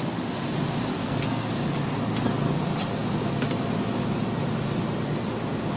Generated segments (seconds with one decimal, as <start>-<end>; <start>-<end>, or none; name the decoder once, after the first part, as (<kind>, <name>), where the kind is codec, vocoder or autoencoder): 0.9-1.5 (codec, SNAC)